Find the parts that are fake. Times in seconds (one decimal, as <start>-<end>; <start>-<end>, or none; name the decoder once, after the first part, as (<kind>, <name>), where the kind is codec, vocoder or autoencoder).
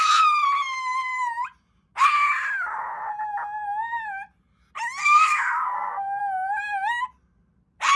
5.0-6.2 (codec, SNAC)